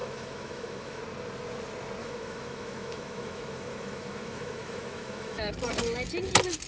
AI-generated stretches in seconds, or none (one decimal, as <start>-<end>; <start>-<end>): 0.0-1.0; 2.0-5.5